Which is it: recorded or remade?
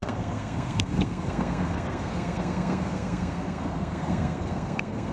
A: remade